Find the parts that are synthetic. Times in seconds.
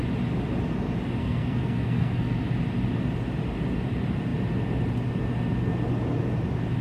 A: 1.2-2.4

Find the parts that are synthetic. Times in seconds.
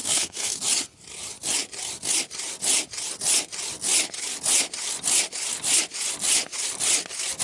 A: 0.0-0.6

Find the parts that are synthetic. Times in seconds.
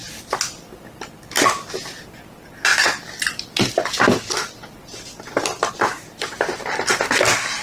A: none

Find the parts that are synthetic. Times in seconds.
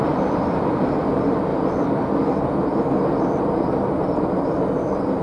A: none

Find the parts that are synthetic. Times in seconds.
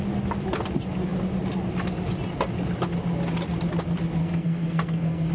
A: 4.2-5.3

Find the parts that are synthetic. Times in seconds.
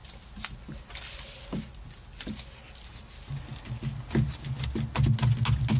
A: none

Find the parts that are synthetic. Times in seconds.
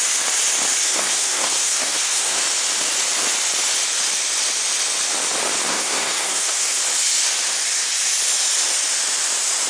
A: 0.8-2.4; 5.7-6.8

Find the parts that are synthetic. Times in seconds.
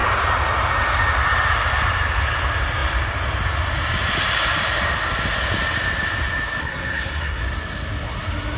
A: 6.6-7.4